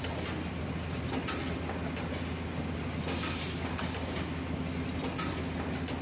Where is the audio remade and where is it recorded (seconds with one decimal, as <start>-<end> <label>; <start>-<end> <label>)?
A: 0.0-6.0 recorded